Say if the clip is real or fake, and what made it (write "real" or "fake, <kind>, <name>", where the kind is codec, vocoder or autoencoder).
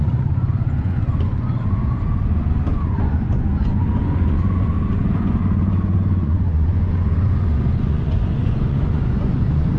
fake, vocoder, Vocos